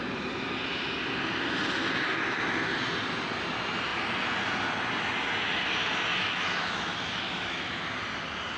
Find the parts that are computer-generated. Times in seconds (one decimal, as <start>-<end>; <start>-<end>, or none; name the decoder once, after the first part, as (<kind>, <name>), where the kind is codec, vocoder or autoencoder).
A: 6.1-7.8 (autoencoder, DAC-VAE)